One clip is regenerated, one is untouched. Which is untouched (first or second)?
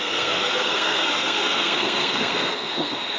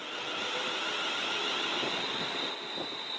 second